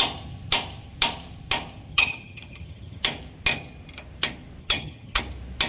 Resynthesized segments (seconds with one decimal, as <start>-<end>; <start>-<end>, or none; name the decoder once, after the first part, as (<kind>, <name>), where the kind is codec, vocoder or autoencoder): 1.9-3.0 (vocoder, HiFi-GAN); 4.6-5.2